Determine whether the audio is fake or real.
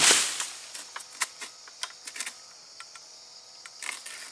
real